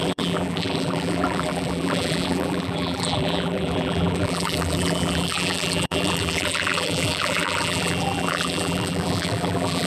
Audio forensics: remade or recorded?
remade